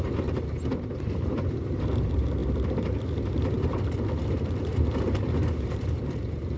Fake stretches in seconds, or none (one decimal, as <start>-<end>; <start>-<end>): 0.0-6.6